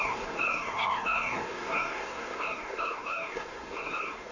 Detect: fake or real fake